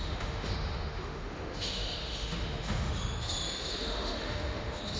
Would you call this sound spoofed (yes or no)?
yes